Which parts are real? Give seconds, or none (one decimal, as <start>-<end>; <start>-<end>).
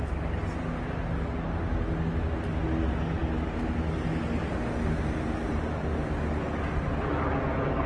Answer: 0.0-7.9